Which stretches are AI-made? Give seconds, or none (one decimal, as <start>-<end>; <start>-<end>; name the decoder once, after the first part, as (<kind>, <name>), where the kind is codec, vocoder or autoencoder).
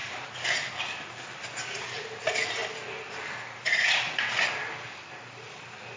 none